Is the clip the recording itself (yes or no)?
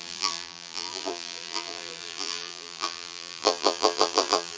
no